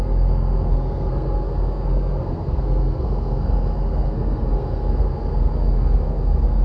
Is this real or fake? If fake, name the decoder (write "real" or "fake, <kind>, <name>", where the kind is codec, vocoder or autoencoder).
fake, codec, SNAC